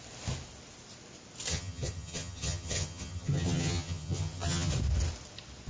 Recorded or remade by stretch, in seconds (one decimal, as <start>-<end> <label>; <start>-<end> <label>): 0.0-1.5 recorded; 1.5-4.7 remade; 4.7-5.7 recorded